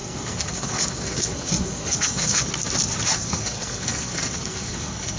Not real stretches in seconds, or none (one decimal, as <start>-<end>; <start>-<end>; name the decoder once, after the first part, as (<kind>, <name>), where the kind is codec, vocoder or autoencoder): 0.0-2.5 (codec, SNAC); 3.1-5.2